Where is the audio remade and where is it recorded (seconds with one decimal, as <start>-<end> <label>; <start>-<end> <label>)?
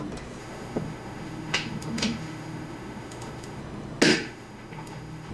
0.0-0.4 recorded; 0.4-3.6 remade; 3.6-4.1 recorded; 4.1-5.3 remade